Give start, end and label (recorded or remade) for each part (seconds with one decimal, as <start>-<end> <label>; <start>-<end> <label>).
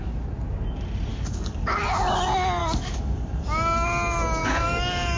0.0-1.1 recorded; 1.1-1.8 remade; 1.8-2.6 recorded; 2.6-3.4 remade; 3.4-4.4 recorded; 4.4-5.2 remade